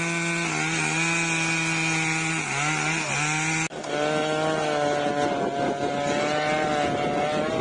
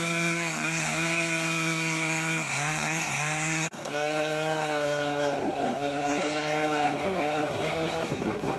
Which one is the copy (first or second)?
second